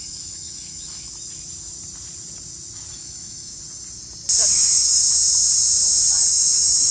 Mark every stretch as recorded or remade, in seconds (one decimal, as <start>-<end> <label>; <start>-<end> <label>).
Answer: 0.0-1.1 remade; 1.1-2.9 recorded; 2.9-3.5 remade; 3.5-4.5 recorded; 4.5-5.0 remade; 5.0-6.3 recorded; 6.3-6.9 remade